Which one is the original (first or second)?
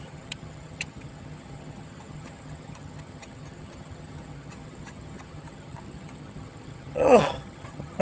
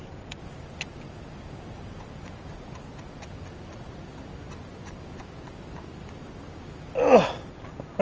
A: second